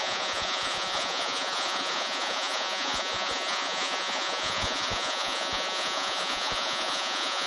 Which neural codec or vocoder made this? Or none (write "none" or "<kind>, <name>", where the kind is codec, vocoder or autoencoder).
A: vocoder, Vocos